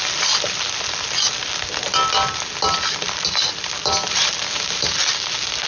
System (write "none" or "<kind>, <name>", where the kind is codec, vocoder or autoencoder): none